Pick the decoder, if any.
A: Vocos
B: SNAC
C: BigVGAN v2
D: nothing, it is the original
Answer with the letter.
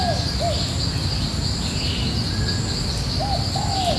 D